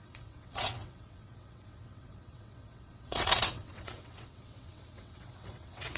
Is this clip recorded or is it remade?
remade